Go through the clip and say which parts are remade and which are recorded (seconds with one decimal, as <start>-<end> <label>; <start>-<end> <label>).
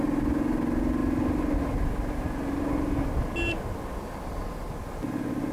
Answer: 0.0-5.5 recorded